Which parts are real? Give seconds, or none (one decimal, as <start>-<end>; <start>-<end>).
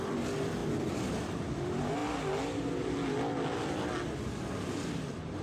0.0-5.4